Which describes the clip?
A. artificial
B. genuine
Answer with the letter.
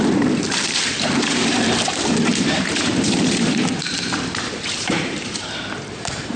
A